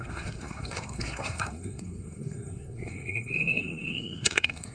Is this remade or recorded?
remade